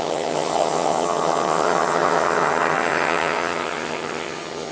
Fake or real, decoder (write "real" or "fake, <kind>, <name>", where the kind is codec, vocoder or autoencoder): fake, vocoder, HiFi-GAN